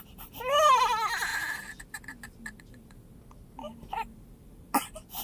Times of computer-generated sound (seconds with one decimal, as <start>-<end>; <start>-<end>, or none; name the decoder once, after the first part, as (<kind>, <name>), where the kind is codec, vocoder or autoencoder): 1.3-2.0 (vocoder, BigVGAN v2); 3.7-4.7